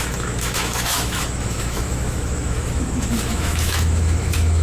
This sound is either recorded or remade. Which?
remade